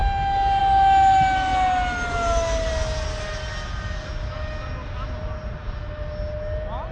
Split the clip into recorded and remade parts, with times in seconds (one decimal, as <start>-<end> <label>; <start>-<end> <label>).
0.0-6.9 recorded